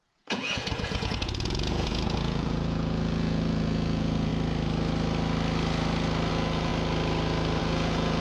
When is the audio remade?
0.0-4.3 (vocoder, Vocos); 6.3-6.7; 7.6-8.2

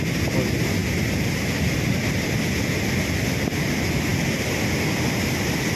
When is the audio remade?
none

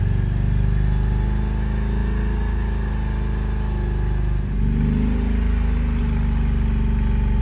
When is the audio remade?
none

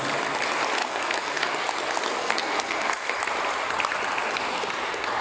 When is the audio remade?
0.8-1.6 (codec, SNAC); 2.2-3.2